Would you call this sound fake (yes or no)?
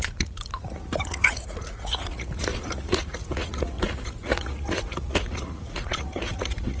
yes